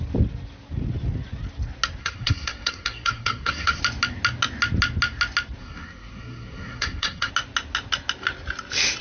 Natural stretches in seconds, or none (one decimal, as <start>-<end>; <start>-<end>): 0.0-2.0; 3.8-5.6; 7.3-9.0

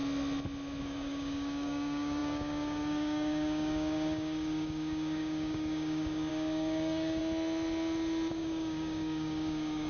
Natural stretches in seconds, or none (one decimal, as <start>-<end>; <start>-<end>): 0.0-0.8; 7.2-8.3

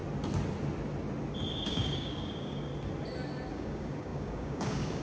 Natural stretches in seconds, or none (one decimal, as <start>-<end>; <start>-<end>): 0.0-1.5; 2.7-3.5

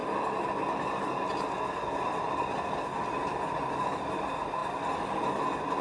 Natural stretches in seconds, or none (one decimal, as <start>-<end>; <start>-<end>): 0.0-5.8

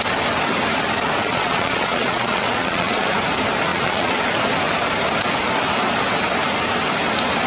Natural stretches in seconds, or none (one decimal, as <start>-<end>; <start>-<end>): 0.0-1.2; 3.1-3.7; 4.2-7.5

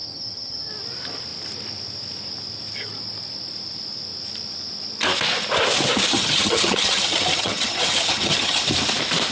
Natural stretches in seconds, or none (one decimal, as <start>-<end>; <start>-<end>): 0.7-6.1; 8.6-9.3

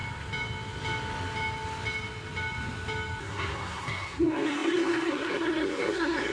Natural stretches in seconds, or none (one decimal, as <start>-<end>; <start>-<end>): 0.0-3.2